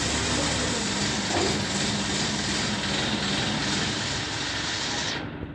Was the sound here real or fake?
real